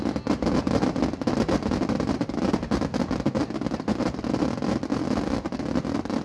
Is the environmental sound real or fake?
real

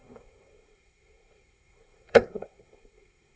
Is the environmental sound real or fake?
fake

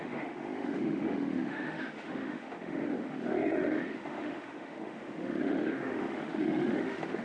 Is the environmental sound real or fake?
fake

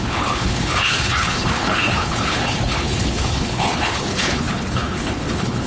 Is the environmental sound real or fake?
fake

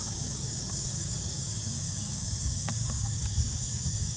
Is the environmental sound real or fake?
fake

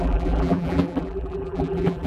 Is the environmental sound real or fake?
fake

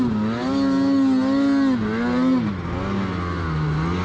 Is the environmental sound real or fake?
real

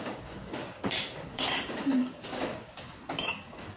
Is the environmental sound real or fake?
fake